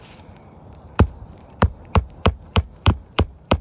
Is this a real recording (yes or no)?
no